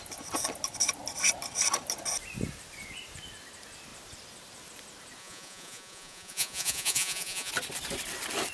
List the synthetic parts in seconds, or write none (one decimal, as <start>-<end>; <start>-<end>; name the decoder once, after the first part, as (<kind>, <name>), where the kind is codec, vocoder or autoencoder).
5.2-7.5 (vocoder, Vocos)